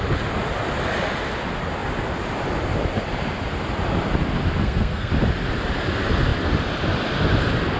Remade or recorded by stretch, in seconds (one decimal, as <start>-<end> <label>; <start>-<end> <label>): 0.0-4.6 recorded; 4.6-5.1 remade; 5.1-7.8 recorded